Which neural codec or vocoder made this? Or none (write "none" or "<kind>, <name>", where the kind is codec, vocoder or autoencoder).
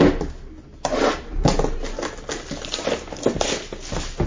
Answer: none